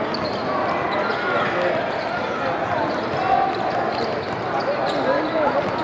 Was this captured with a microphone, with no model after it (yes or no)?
yes